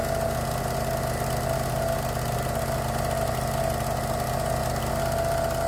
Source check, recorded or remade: recorded